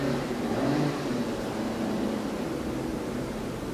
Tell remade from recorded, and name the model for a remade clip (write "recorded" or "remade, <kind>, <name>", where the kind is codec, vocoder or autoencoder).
remade, vocoder, BigVGAN v2